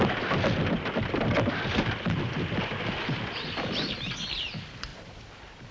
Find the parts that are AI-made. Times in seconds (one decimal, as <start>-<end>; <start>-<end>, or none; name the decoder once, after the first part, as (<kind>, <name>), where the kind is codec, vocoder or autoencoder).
none